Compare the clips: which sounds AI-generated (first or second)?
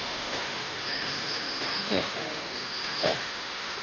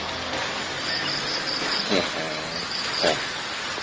first